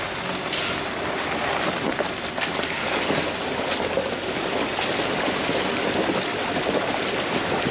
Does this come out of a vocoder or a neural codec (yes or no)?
no